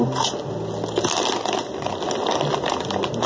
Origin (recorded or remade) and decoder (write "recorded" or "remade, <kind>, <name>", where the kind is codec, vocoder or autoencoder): recorded